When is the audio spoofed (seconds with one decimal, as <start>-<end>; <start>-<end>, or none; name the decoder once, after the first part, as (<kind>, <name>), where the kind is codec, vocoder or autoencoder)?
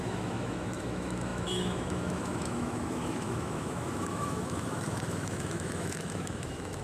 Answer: 0.0-6.8 (autoencoder, DAC-VAE)